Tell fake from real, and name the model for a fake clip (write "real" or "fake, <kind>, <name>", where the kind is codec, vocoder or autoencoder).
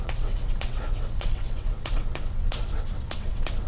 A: fake, vocoder, WaveNeXt